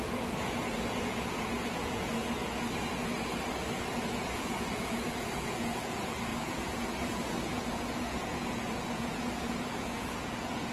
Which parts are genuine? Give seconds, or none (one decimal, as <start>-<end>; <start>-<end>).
2.2-4.1